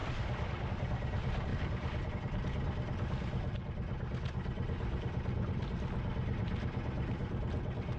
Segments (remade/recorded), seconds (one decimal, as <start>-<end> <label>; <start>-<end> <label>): 0.0-0.7 remade; 0.7-1.5 recorded; 1.5-2.1 remade; 2.1-8.0 recorded